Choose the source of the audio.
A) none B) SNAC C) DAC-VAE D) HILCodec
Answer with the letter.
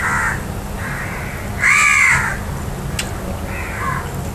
A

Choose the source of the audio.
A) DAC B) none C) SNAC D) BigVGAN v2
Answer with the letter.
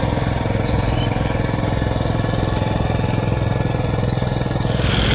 B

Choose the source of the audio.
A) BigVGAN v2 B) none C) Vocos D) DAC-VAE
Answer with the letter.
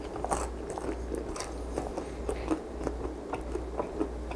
B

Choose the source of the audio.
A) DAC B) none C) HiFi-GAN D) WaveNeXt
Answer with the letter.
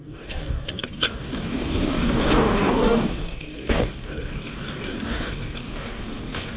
A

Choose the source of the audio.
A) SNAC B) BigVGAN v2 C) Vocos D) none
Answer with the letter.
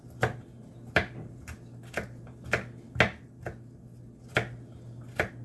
D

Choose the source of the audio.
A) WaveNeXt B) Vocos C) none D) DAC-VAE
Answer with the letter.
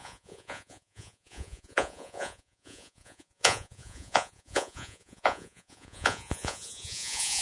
B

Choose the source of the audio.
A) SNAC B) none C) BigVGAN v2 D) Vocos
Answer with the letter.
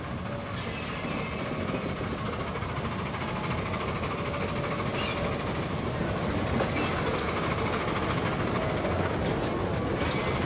B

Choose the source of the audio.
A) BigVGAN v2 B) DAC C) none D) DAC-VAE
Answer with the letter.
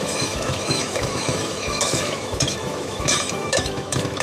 D